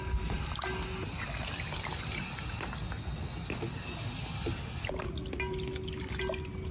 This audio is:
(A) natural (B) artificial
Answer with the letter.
A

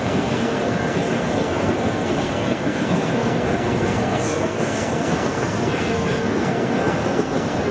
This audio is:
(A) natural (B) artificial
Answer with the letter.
B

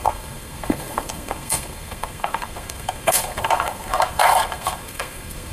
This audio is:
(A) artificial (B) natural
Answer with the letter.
A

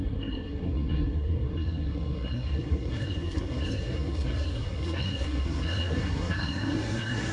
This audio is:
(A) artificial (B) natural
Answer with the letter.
A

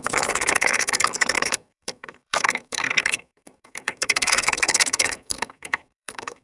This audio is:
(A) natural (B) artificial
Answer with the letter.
B